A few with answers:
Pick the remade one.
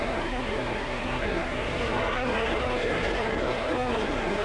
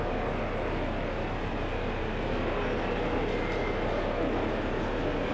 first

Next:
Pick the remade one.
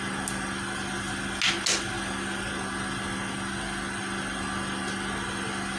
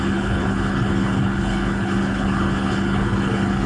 second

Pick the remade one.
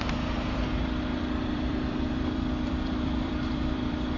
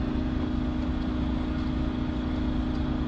first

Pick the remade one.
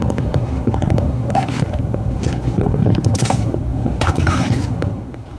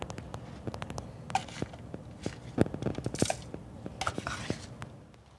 first